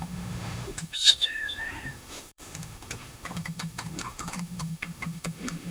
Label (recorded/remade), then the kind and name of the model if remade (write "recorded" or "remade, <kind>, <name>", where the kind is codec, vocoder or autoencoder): remade, autoencoder, DAC-VAE